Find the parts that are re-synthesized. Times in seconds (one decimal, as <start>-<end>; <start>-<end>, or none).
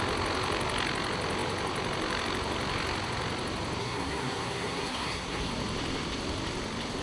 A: 3.8-5.5